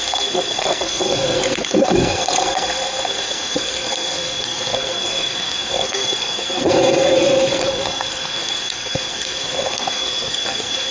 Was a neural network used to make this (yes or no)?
yes